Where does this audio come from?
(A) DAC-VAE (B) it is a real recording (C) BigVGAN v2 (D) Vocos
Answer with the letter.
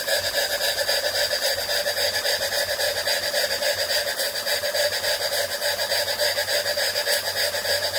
B